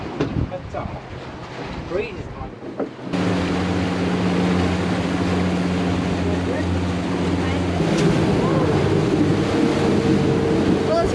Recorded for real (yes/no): yes